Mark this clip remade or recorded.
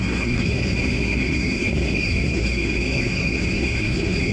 remade